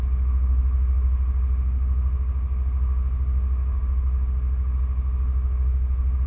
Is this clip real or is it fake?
real